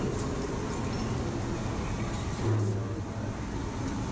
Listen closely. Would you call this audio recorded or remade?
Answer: recorded